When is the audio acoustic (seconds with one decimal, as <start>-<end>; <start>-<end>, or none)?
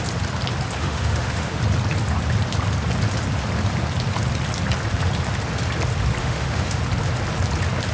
0.0-0.8; 1.6-6.2; 6.8-7.9